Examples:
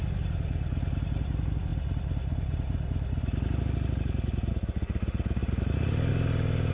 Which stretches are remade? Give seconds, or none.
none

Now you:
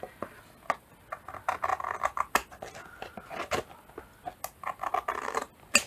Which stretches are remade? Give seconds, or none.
none

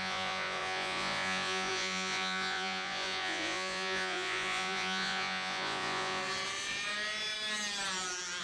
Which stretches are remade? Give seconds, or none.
0.0-6.2 (vocoder, Vocos)

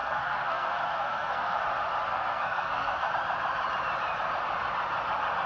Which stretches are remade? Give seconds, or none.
0.0-1.6 (codec, SNAC); 2.1-3.1